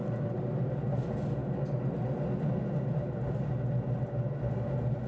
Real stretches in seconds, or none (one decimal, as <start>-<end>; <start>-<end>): 0.0-5.1